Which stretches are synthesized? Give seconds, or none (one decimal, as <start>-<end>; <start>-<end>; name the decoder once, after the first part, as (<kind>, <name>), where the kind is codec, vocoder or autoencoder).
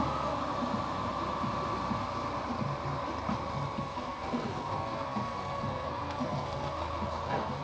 0.0-0.4 (codec, SNAC); 3.8-7.6